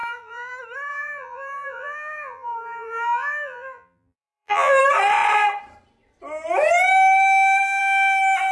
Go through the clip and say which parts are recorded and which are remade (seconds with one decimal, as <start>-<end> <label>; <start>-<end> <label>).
0.0-0.5 remade; 0.5-0.9 recorded; 0.9-4.8 remade; 4.8-8.5 recorded